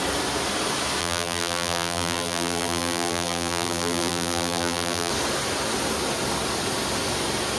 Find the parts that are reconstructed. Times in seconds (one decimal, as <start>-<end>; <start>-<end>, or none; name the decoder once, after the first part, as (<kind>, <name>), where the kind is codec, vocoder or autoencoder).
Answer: 1.0-5.1 (vocoder, BigVGAN v2)